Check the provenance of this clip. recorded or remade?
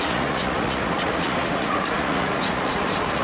remade